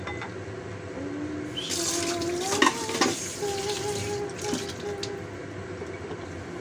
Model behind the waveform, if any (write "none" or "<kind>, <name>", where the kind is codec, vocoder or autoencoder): none